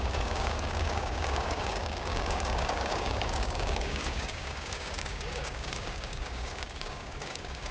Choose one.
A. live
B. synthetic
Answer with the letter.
B